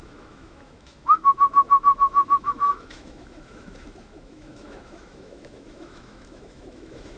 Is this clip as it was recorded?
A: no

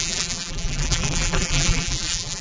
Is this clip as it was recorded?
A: no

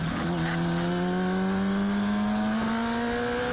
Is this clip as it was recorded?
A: yes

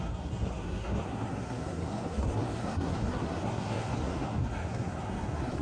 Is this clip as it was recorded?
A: no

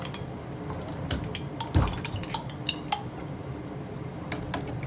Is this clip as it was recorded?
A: yes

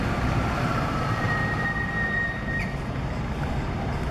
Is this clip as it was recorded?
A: no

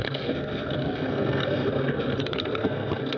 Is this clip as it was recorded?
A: no